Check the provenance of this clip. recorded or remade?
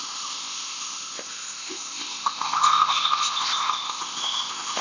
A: remade